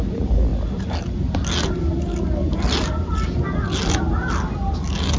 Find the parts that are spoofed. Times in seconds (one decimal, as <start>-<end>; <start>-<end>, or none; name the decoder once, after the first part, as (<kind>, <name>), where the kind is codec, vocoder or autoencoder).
none